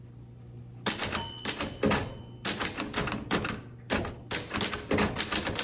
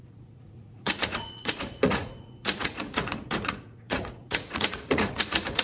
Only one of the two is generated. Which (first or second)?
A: second